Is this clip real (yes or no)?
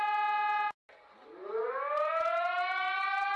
yes